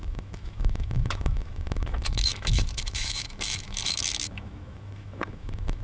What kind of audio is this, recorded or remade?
remade